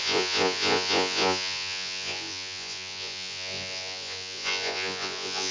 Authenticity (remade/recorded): remade